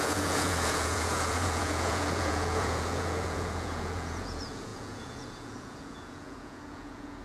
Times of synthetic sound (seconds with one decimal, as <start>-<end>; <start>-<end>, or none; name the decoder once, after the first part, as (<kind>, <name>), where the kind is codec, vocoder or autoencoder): 0.0-7.2 (vocoder, Vocos)